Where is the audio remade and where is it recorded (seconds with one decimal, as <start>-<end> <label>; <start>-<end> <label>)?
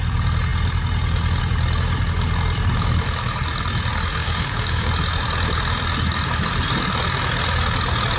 0.0-4.2 recorded; 4.2-4.9 remade; 4.9-8.2 recorded